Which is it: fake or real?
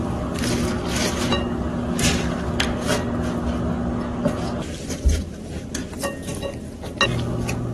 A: real